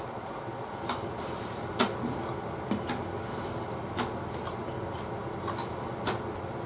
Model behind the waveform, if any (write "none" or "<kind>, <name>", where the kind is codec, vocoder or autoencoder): none